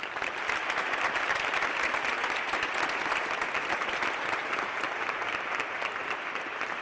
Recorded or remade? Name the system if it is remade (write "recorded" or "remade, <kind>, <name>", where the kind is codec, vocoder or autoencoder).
recorded